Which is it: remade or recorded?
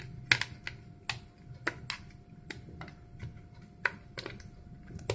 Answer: recorded